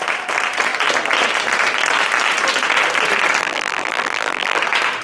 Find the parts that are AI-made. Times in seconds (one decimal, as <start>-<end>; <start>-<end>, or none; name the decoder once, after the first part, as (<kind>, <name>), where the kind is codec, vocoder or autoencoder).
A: 3.4-4.6 (vocoder, BigVGAN v2)